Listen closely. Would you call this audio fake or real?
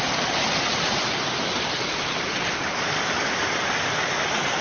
real